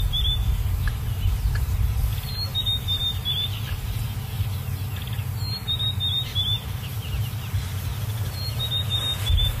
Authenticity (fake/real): real